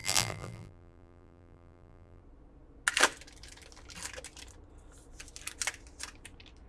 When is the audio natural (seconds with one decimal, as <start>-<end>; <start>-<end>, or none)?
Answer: 2.2-6.7